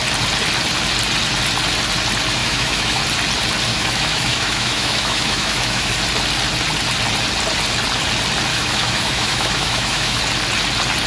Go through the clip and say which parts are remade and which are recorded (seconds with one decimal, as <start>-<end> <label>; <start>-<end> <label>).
0.0-2.4 recorded; 2.4-3.0 remade; 3.0-3.7 recorded; 3.7-5.9 remade; 5.9-8.5 recorded; 8.5-10.2 remade; 10.2-11.1 recorded